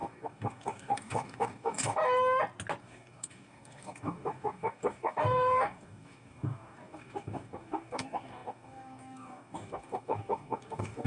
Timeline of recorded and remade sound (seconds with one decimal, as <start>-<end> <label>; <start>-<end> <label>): 0.0-2.0 remade; 2.0-2.8 recorded; 2.8-11.1 remade